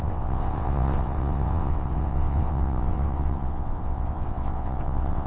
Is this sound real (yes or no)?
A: no